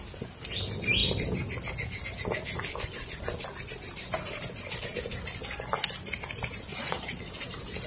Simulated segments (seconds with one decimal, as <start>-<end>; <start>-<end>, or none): 6.7-7.3